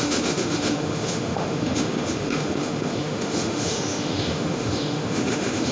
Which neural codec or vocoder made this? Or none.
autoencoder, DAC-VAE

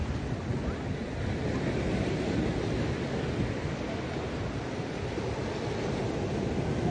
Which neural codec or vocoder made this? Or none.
none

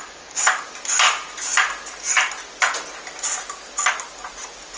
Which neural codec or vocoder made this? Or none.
none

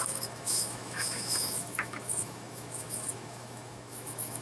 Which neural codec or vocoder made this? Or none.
autoencoder, DAC-VAE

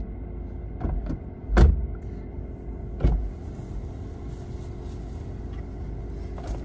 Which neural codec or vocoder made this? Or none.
none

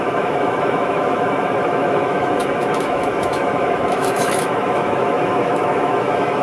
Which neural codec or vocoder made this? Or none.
autoencoder, DAC-VAE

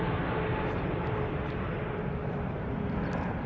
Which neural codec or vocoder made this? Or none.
none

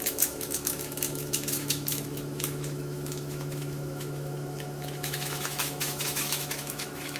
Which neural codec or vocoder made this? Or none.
autoencoder, DAC-VAE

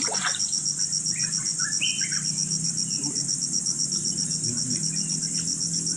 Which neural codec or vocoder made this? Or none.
none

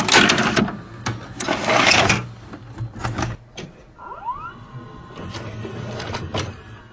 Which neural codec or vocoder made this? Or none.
none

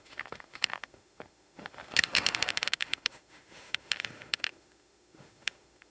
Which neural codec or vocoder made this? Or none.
autoencoder, DAC-VAE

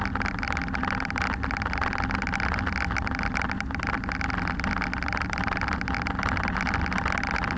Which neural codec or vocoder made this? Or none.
none